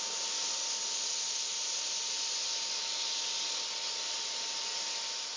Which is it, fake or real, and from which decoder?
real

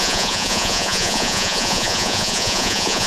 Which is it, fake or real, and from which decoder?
fake, vocoder, Vocos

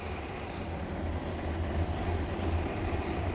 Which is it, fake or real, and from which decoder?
real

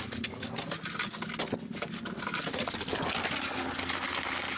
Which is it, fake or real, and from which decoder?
real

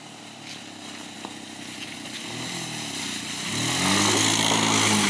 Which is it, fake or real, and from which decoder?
real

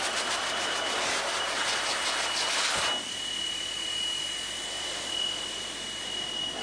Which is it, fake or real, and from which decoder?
real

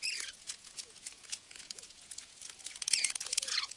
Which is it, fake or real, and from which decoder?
fake, vocoder, Vocos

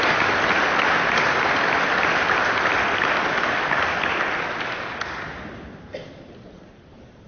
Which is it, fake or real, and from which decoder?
real